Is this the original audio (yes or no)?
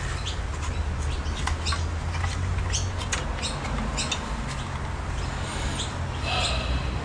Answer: yes